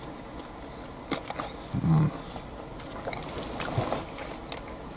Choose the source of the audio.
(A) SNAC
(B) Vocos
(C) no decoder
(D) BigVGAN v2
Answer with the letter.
C